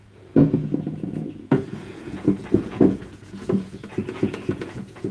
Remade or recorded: remade